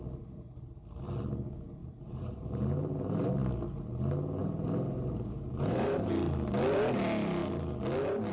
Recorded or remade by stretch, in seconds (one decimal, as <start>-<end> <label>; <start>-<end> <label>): 0.0-1.8 recorded; 1.8-3.3 remade; 3.3-4.4 recorded; 4.4-6.1 remade; 6.1-8.3 recorded

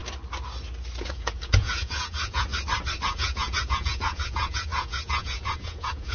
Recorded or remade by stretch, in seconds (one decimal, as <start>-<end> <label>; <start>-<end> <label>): 0.0-1.0 recorded; 1.0-2.5 remade; 2.5-3.1 recorded; 3.1-6.1 remade